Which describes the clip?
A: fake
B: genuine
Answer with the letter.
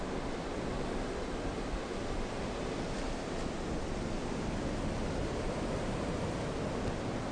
B